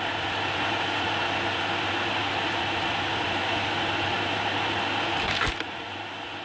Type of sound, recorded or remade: recorded